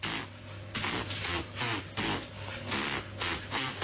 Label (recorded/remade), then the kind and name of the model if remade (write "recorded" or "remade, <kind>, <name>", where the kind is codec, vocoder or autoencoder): recorded